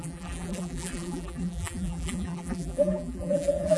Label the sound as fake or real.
fake